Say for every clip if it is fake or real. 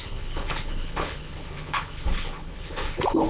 fake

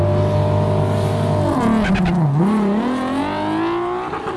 real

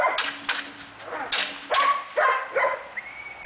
real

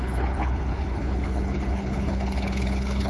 fake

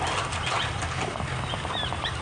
real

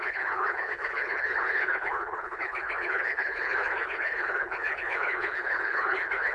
fake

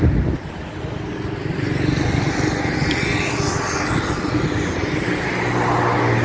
real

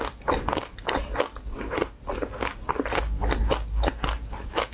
real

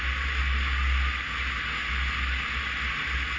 real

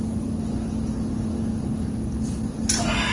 real